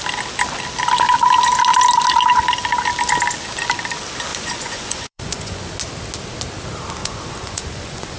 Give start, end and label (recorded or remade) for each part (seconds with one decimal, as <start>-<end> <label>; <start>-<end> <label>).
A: 0.0-4.3 recorded; 4.3-5.7 remade; 5.7-7.0 recorded; 7.0-8.2 remade